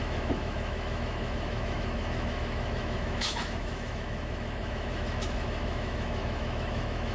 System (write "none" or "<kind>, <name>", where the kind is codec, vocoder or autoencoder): autoencoder, DAC-VAE